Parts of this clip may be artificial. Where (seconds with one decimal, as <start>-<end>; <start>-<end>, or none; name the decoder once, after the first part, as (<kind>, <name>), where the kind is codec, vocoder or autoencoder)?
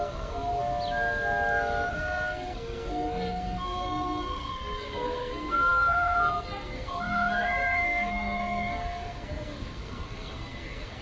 0.0-0.6 (codec, SNAC); 1.9-11.0